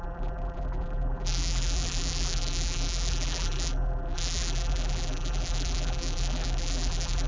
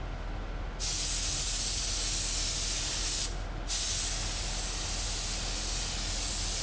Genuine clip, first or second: second